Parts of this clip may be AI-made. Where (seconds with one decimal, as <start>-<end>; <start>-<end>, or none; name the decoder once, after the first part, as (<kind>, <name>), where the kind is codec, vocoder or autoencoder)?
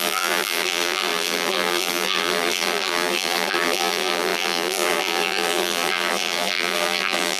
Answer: 0.0-7.4 (vocoder, BigVGAN v2)